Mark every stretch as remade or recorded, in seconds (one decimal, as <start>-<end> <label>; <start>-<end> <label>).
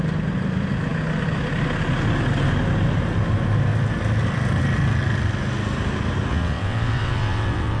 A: 0.0-6.3 recorded; 6.3-7.8 remade